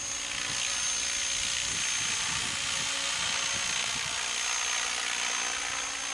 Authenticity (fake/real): real